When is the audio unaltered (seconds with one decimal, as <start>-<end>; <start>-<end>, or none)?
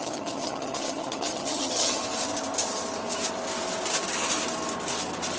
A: 2.0-5.4